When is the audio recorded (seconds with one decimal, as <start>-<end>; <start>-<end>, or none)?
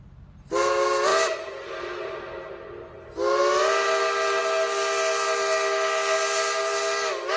0.0-7.4